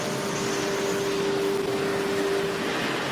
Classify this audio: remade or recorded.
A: recorded